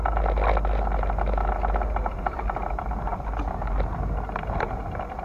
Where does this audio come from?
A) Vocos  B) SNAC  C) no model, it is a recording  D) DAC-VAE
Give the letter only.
C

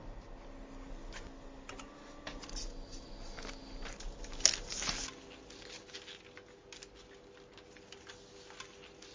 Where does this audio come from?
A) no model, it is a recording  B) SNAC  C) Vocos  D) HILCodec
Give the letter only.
A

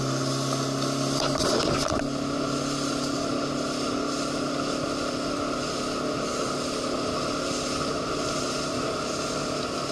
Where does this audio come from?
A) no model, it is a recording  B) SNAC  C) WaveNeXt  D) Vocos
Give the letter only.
A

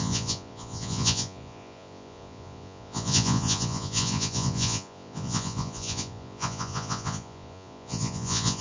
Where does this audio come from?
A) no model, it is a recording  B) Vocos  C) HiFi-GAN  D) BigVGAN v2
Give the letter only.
B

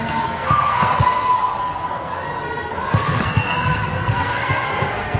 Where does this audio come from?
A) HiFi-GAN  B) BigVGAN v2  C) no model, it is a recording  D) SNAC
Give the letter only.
D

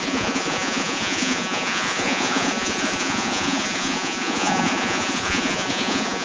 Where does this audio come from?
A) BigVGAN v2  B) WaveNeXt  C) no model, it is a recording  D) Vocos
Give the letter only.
D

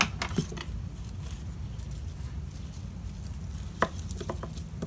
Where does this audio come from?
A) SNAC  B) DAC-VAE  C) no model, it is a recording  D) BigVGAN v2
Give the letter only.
C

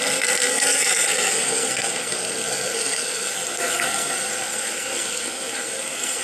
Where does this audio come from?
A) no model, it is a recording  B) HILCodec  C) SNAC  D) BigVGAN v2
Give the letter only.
C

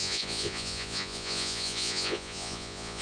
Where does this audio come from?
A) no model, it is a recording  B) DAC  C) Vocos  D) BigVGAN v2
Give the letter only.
C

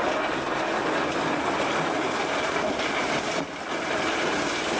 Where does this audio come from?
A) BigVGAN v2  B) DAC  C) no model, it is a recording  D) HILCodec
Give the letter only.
C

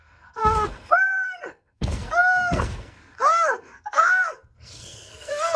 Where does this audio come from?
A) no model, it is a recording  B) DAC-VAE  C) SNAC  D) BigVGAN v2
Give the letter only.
C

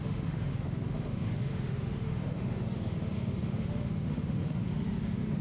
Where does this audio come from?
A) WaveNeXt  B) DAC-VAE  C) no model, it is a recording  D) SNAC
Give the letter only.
B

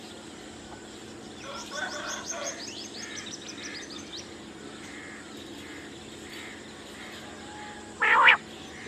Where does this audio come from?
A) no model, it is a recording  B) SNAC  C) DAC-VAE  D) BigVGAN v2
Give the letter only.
D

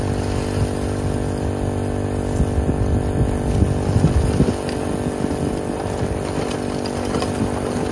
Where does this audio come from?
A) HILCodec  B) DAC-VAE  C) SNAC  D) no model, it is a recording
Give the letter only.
D